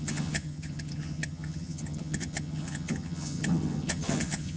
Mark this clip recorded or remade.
remade